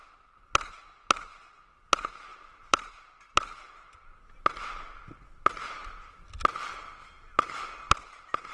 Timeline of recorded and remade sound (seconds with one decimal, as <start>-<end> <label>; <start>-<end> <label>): 0.0-0.7 remade; 0.7-2.3 recorded; 2.3-3.6 remade; 3.6-5.8 recorded; 5.8-6.7 remade; 6.7-8.5 recorded